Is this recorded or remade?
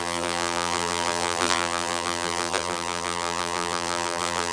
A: remade